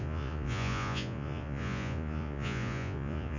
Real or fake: fake